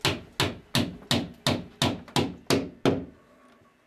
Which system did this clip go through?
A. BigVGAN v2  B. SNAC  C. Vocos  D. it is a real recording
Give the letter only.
D